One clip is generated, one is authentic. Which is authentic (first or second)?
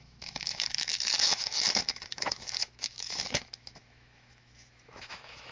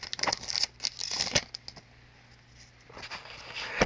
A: second